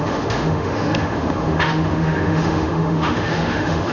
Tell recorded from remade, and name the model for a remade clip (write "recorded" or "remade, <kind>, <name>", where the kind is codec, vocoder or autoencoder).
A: remade, autoencoder, DAC-VAE